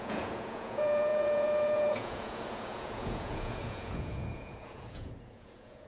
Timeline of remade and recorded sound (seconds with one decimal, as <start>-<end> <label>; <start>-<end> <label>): 0.0-5.9 remade